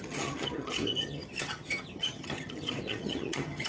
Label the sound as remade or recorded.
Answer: remade